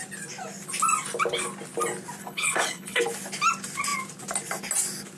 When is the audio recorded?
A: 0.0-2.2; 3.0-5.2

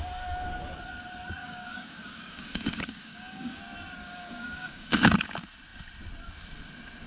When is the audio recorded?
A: 0.0-1.4; 3.6-4.0; 5.1-7.1

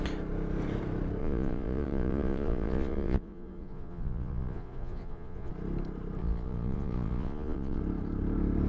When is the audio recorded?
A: 0.0-1.2; 5.5-6.2; 7.8-8.7